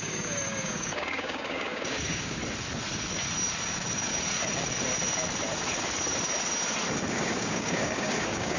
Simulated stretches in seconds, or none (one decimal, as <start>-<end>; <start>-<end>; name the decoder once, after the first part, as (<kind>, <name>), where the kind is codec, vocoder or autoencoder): 0.0-2.4 (codec, DAC); 7.1-8.6